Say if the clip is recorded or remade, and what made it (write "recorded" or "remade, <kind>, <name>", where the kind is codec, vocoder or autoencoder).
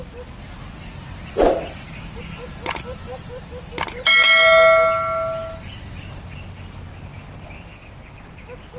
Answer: recorded